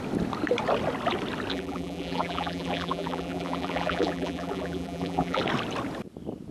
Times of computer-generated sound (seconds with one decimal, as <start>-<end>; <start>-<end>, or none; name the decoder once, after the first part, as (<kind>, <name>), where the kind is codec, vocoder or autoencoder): 1.5-5.4 (vocoder, BigVGAN v2)